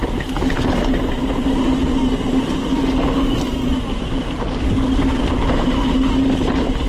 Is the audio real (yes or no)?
yes